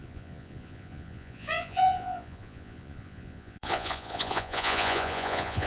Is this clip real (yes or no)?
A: no